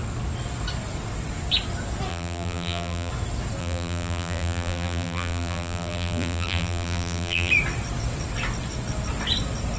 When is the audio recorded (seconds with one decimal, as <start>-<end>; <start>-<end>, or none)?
0.0-2.1; 3.1-3.6; 7.5-9.8